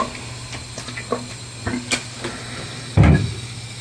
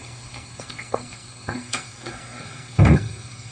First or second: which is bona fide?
first